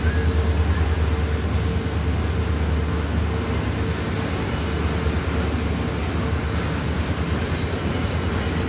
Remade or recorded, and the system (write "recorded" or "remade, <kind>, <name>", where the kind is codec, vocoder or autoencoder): recorded